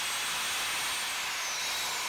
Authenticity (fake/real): real